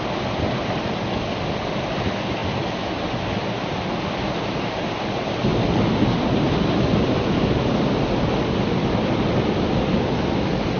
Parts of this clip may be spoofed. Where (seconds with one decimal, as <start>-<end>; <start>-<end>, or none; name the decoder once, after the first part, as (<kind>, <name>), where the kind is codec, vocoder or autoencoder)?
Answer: none